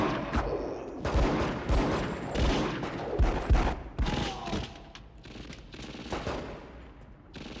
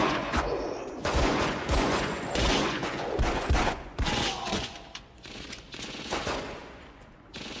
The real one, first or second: first